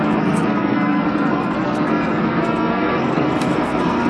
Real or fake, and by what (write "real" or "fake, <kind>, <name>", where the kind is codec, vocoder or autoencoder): fake, codec, SNAC